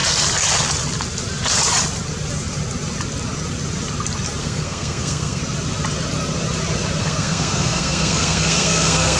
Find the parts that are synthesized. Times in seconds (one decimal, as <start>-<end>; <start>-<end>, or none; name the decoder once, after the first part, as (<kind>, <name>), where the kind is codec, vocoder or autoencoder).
4.4-5.4 (codec, SNAC); 7.0-9.2